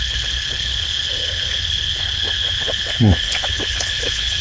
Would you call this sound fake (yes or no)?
yes